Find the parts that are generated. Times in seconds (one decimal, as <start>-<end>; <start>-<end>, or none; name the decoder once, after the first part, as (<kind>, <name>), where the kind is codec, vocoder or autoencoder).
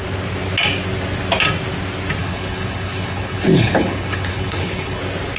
2.2-5.0 (codec, HILCodec)